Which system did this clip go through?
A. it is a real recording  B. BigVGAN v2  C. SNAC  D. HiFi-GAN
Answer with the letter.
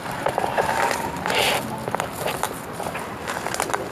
A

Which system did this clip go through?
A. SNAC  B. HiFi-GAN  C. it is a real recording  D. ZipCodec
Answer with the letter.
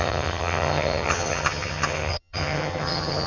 B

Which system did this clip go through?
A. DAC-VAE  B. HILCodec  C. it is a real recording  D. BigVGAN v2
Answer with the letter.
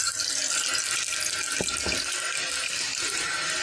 C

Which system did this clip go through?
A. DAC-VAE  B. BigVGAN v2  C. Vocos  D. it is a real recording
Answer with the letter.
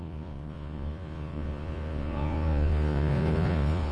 C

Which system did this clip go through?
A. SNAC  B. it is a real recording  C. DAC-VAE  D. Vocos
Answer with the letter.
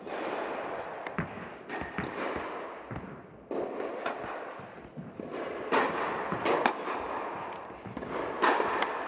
B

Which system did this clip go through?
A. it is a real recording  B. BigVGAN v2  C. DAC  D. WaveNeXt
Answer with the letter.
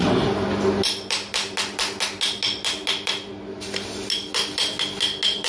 A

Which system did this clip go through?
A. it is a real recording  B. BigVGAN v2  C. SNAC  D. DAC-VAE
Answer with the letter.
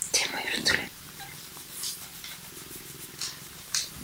B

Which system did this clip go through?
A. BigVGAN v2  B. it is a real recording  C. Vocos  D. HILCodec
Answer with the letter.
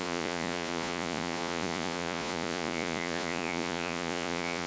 C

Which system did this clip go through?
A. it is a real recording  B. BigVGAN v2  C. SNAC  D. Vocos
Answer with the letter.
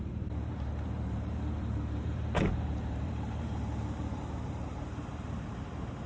B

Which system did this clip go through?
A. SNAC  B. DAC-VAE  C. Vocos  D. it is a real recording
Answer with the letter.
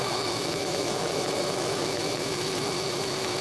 B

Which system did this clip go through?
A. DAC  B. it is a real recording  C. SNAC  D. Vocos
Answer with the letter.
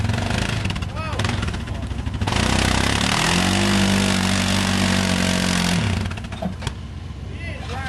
B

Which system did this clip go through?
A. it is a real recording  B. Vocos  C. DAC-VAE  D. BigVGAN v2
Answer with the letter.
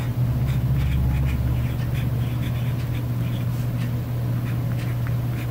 A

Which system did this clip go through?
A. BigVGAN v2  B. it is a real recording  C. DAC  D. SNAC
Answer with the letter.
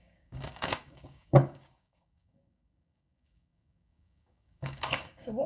C